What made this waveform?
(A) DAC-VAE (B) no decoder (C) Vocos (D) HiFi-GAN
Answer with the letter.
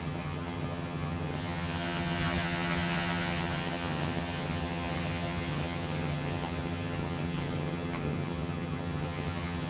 D